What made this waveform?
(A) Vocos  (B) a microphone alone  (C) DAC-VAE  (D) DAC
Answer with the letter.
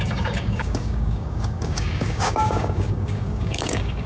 D